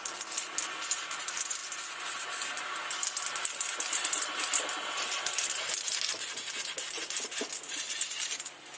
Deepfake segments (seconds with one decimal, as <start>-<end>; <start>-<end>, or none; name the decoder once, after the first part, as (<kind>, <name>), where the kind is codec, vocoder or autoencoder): none